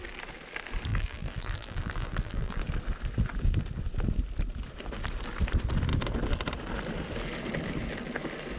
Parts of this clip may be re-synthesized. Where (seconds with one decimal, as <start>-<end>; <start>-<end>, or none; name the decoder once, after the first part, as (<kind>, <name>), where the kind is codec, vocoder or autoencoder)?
0.9-2.6 (vocoder, BigVGAN v2)